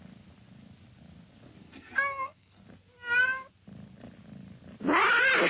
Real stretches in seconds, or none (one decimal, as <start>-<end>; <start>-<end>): 0.0-1.6; 2.6-5.5